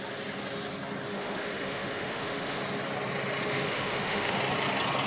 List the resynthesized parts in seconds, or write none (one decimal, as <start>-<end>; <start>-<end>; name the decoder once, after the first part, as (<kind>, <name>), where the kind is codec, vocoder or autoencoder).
1.1-2.6 (autoencoder, DAC-VAE); 3.5-4.4